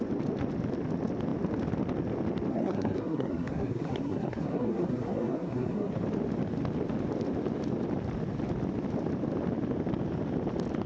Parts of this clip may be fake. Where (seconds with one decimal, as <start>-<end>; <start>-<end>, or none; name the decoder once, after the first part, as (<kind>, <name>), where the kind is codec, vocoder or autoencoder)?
2.5-5.9 (codec, SNAC)